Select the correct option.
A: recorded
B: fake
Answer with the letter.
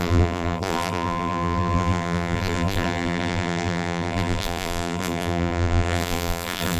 B